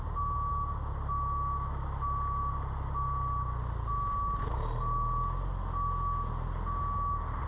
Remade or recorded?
recorded